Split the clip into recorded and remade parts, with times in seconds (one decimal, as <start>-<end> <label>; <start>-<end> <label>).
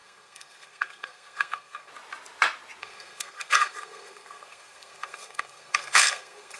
0.0-1.9 remade; 1.9-2.8 recorded; 2.8-6.6 remade